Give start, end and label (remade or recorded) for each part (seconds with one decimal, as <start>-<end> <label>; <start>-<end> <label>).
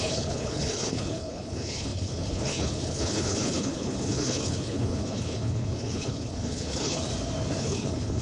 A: 0.0-7.1 remade; 7.1-7.6 recorded; 7.6-8.2 remade